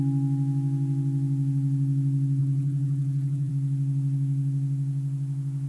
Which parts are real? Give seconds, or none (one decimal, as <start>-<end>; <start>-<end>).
0.0-2.4; 3.5-5.7